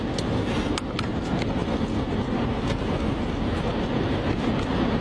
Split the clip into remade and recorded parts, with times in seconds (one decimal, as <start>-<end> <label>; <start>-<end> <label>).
0.0-5.0 recorded